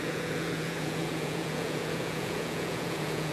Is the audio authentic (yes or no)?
no